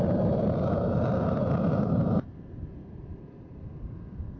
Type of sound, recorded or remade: remade